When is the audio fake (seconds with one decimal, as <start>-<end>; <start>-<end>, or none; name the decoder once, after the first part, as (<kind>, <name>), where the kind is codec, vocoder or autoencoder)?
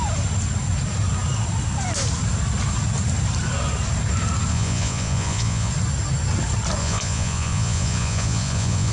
4.5-5.7 (vocoder, Vocos); 6.8-8.9